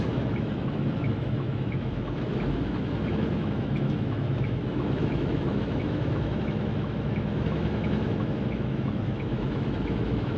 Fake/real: fake